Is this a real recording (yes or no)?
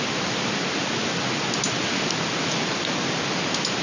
yes